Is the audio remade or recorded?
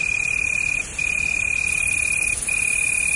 recorded